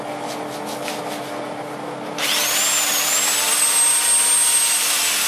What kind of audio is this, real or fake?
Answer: real